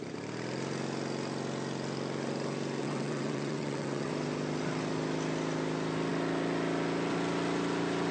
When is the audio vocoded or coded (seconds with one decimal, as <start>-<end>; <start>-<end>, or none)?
2.8-4.1